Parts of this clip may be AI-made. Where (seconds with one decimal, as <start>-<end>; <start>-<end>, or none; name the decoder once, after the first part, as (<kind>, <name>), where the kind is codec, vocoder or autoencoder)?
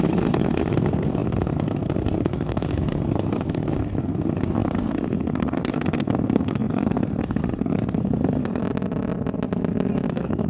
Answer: 0.0-8.6 (codec, SNAC); 10.1-10.5